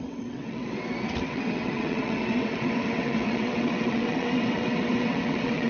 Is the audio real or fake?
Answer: fake